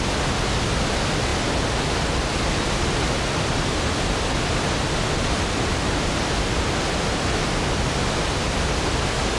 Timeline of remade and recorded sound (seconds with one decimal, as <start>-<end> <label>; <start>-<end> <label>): 0.0-9.4 recorded